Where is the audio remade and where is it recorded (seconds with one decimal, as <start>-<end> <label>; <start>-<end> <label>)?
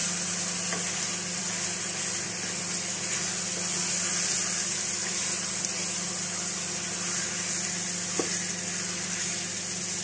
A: 0.0-10.0 recorded